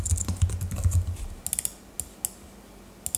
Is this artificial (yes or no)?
no